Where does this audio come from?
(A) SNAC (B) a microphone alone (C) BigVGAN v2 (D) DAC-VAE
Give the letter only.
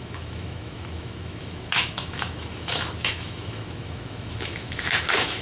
D